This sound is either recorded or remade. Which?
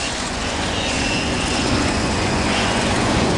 remade